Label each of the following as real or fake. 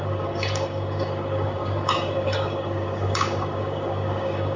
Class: fake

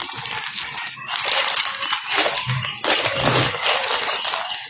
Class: real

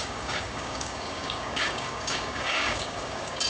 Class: fake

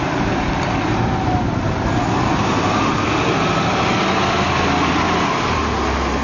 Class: real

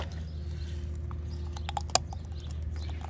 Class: real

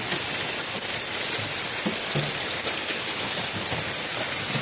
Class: real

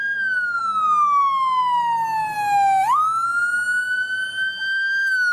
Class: real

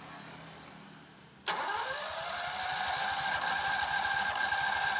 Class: real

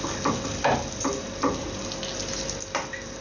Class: real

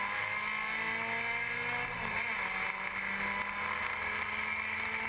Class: real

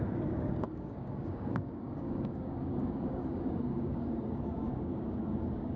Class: fake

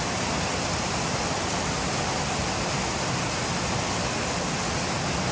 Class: real